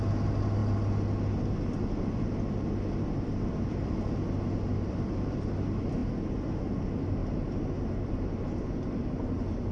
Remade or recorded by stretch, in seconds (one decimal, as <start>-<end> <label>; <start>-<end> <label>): 0.0-9.7 recorded